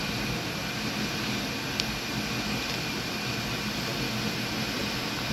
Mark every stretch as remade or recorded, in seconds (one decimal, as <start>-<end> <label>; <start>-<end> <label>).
0.0-5.3 recorded